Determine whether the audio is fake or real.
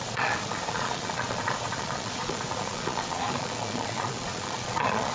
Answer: fake